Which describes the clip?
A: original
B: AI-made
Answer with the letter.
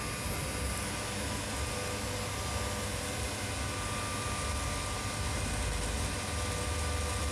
A